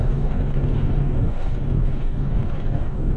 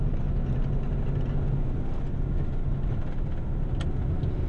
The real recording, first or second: second